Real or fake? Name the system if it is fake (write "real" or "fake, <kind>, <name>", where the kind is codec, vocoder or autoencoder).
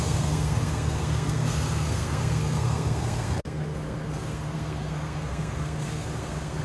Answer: fake, codec, SNAC